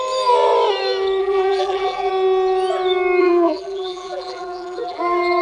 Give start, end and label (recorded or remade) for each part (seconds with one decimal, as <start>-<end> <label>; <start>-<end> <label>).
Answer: 0.0-1.2 recorded; 1.2-2.1 remade; 2.1-3.2 recorded; 3.2-5.0 remade; 5.0-5.4 recorded